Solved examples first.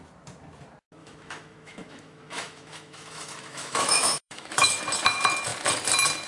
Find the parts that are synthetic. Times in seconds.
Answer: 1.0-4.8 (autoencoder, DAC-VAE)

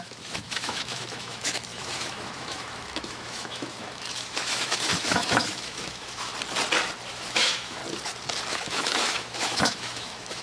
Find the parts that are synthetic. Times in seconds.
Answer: 0.0-6.3 (autoencoder, DAC-VAE); 7.1-7.8; 8.5-10.4

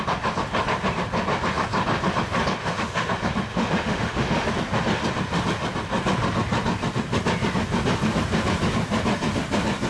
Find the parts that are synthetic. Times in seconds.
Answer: 2.6-3.1 (autoencoder, DAC-VAE); 3.5-4.5

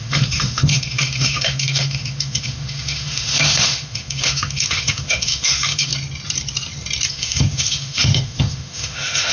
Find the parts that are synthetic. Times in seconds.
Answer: 0.0-5.9 (autoencoder, DAC-VAE); 7.1-9.3

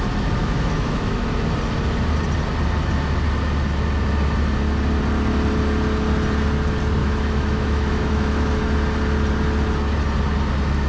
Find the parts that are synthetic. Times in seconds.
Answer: 0.4-1.2 (autoencoder, DAC-VAE); 7.0-8.6

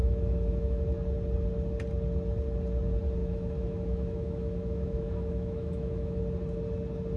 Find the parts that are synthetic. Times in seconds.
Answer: 0.0-0.8 (autoencoder, DAC-VAE); 3.2-6.2

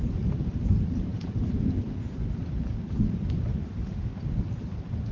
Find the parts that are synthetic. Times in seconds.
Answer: 3.5-4.1 (autoencoder, DAC-VAE)